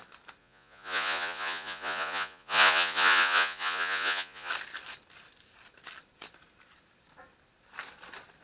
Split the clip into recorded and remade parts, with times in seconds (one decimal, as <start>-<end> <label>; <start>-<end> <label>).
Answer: 0.0-0.4 recorded; 0.4-4.5 remade; 4.5-8.4 recorded